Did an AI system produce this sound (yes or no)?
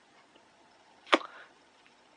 yes